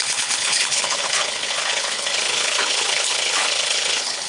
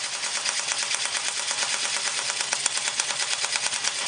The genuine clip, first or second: second